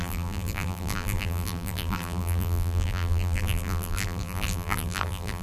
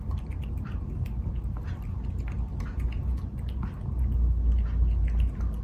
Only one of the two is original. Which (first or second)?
second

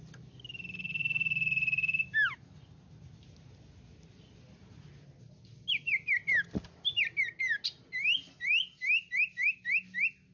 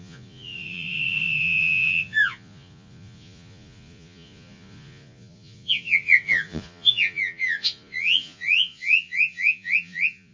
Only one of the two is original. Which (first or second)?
first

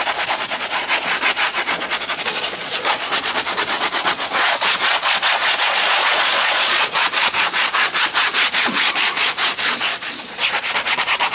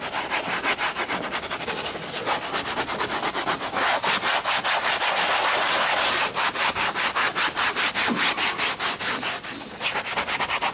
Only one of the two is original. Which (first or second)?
second